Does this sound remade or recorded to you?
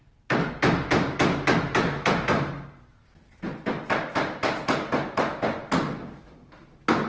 recorded